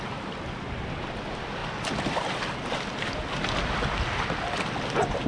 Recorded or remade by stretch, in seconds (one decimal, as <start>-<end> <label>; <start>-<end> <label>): 0.0-5.3 recorded

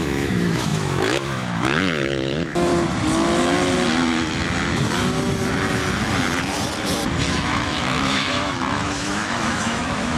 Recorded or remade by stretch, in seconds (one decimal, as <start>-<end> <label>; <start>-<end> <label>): 0.0-2.7 remade; 2.7-7.2 recorded; 7.2-10.2 remade

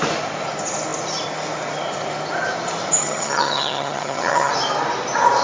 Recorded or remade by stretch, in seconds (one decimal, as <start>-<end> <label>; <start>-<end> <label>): 0.0-3.0 recorded; 3.0-4.5 remade; 4.5-5.4 recorded

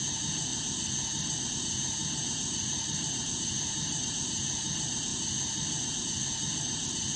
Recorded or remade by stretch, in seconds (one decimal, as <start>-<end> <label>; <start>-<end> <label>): 0.0-0.5 remade; 0.5-1.5 recorded; 1.5-5.1 remade; 5.1-6.0 recorded; 6.0-7.2 remade

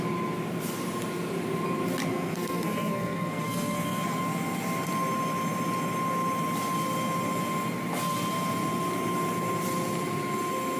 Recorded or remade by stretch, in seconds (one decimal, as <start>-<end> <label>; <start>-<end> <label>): 0.0-2.1 recorded; 2.1-4.2 remade; 4.2-10.8 recorded

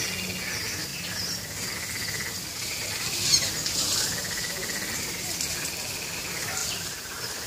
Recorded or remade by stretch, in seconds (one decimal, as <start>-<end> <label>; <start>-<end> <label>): 0.0-6.6 recorded; 6.6-7.5 remade